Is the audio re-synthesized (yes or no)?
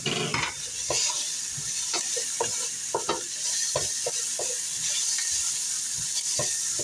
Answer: no